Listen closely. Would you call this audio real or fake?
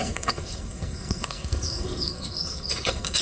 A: fake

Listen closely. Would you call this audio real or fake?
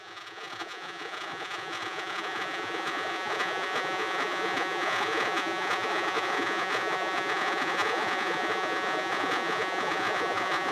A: fake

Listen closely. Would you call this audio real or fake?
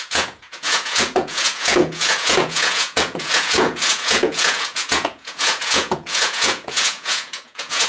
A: fake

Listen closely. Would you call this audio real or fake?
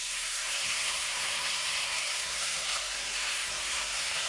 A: fake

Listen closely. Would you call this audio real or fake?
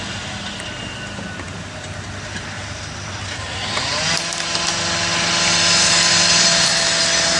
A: real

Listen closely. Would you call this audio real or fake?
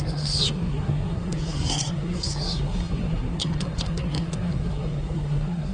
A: fake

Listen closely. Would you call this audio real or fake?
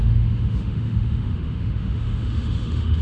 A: fake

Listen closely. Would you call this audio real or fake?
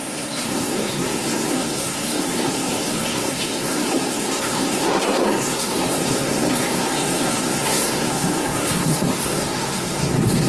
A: fake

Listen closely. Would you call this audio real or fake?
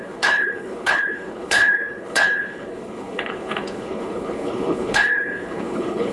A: fake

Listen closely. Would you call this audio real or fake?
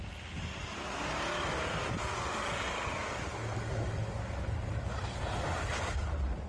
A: real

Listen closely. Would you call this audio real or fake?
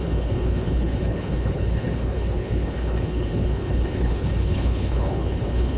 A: fake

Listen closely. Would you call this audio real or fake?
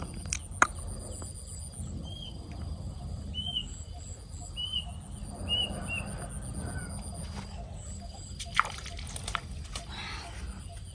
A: real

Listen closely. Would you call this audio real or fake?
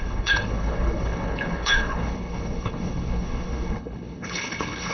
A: fake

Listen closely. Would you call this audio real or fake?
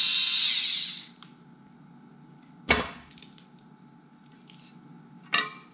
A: real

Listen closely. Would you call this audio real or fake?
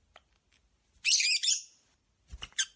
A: real